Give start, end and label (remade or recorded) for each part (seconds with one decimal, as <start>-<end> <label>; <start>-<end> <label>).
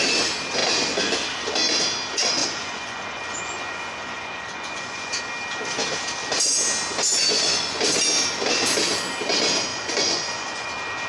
0.0-2.4 recorded; 2.4-5.1 remade; 5.1-7.1 recorded; 7.1-7.8 remade; 7.8-9.7 recorded; 9.7-10.7 remade; 10.7-11.1 recorded